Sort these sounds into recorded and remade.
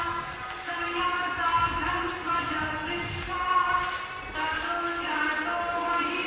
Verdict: recorded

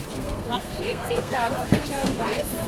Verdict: remade